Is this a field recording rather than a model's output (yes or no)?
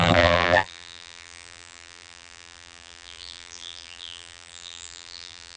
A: no